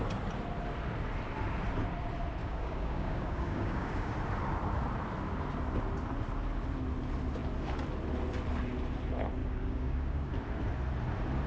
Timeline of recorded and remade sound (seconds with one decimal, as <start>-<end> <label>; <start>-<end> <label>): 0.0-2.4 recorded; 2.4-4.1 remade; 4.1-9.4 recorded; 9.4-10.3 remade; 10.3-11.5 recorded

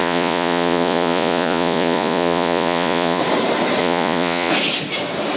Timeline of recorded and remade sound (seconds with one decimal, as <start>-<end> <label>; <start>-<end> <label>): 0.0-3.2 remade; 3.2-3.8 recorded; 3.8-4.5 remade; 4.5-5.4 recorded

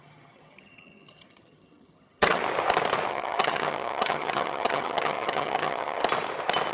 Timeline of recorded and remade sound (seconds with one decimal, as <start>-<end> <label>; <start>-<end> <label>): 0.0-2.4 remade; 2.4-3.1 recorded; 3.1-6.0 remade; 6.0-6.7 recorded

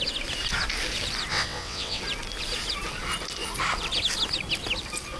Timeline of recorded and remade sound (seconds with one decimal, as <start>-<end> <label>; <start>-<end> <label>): 0.0-1.3 recorded; 1.3-2.0 remade; 2.0-5.2 recorded

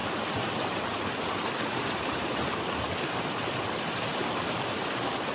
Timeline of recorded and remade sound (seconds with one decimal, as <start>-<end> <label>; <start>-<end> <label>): 0.0-4.2 recorded; 4.2-4.7 remade; 4.7-5.3 recorded

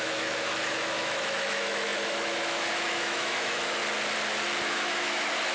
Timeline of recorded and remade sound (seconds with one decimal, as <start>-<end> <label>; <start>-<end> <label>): 0.0-3.8 remade; 3.8-4.6 recorded; 4.6-5.5 remade